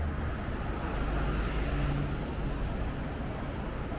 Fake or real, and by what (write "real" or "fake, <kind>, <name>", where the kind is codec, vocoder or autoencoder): real